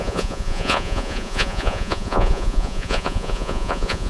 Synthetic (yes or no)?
yes